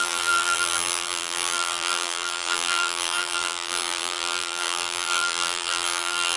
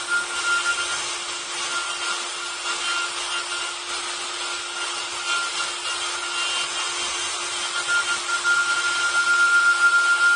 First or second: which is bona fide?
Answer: second